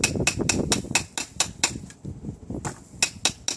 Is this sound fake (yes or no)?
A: no